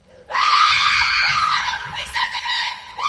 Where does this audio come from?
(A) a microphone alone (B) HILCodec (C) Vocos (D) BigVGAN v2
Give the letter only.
B